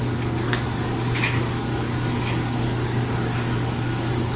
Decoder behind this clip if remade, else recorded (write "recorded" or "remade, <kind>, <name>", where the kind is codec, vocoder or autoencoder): remade, codec, DAC